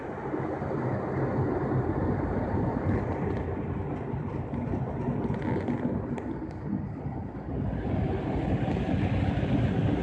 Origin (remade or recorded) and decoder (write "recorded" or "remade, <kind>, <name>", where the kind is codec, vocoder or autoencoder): recorded